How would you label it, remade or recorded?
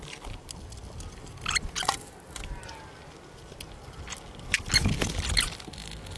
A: recorded